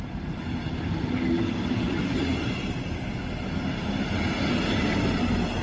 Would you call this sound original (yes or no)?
yes